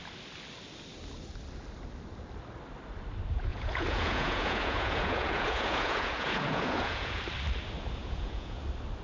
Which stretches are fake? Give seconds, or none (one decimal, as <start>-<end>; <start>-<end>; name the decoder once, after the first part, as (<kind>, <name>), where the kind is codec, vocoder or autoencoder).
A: 3.5-7.2 (vocoder, Vocos); 8.0-8.6